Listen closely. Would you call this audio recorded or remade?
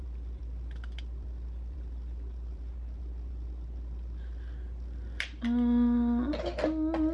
recorded